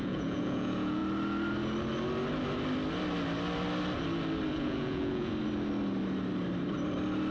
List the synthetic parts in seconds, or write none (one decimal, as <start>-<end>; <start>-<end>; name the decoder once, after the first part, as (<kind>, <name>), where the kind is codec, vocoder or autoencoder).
0.0-1.0 (vocoder, Vocos); 4.5-5.3